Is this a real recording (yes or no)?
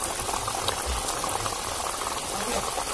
yes